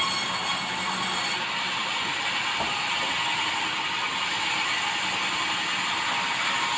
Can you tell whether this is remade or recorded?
recorded